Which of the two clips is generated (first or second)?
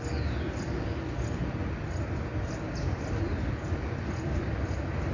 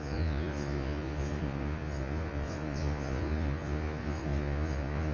second